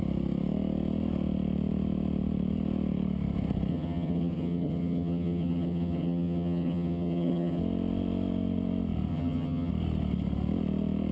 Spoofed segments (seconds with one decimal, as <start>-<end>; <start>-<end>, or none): 3.7-7.6; 9.1-9.7